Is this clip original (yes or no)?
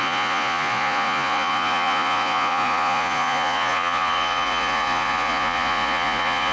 no